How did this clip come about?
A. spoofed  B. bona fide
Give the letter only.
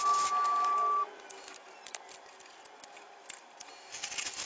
B